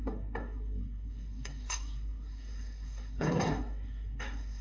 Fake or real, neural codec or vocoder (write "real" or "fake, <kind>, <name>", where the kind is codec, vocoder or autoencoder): fake, codec, SNAC